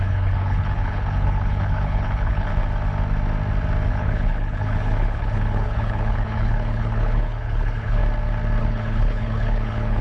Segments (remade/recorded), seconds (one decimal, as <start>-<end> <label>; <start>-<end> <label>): 0.0-2.5 remade; 2.5-3.9 recorded; 3.9-8.0 remade; 8.0-8.6 recorded; 8.6-10.0 remade

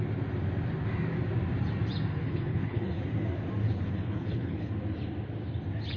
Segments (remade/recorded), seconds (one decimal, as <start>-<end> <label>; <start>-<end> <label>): 0.0-2.2 recorded; 2.2-3.0 remade; 3.0-3.6 recorded; 3.6-4.7 remade; 4.7-6.0 recorded

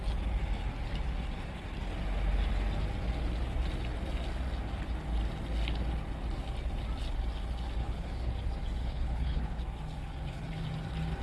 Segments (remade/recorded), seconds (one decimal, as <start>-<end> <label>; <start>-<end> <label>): 0.0-7.8 recorded; 7.8-8.3 remade; 8.3-8.8 recorded; 8.8-9.6 remade; 9.6-11.2 recorded

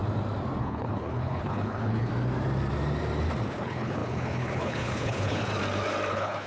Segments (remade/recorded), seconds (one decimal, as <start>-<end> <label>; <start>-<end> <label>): 0.0-0.6 recorded; 0.6-2.1 remade; 2.1-3.5 recorded; 3.5-5.5 remade; 5.5-6.1 recorded; 6.1-6.5 remade